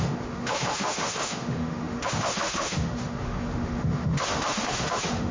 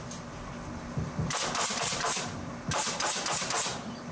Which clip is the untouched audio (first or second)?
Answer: second